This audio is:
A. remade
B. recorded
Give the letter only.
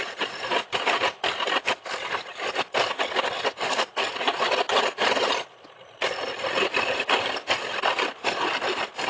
B